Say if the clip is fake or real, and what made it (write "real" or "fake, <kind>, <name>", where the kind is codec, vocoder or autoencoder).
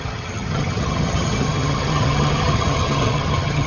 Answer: fake, vocoder, HiFi-GAN